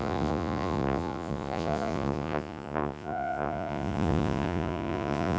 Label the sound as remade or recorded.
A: remade